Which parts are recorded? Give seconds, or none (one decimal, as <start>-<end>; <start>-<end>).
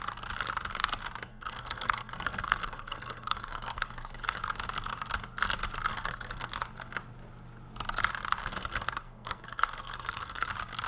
0.0-1.3; 4.4-5.9; 6.5-8.4; 10.5-10.9